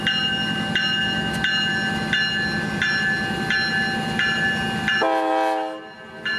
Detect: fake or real real